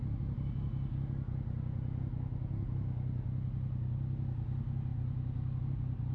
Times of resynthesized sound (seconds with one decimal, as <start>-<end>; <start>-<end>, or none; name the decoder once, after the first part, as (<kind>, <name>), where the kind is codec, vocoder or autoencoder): none